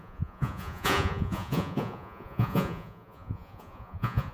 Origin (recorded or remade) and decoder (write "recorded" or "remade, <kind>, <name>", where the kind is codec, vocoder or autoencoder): remade, vocoder, Vocos